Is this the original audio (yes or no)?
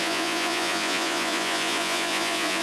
no